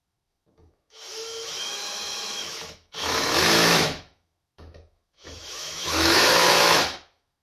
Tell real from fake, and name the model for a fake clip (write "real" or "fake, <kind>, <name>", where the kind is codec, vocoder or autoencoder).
fake, autoencoder, DAC-VAE